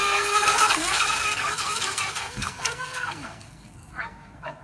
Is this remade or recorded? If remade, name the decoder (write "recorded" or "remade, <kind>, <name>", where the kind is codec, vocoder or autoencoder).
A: remade, codec, SNAC